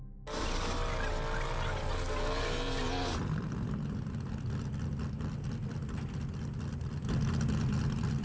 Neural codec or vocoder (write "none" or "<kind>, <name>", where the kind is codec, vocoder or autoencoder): none